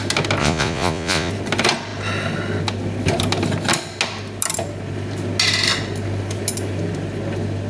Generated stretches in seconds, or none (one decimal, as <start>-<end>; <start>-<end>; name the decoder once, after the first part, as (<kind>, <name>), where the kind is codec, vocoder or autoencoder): 0.4-1.3 (vocoder, Vocos)